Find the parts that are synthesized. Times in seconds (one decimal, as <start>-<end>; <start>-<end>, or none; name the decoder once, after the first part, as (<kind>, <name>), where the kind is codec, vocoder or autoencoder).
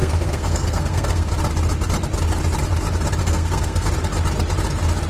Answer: 0.0-1.3 (codec, SNAC); 3.2-3.9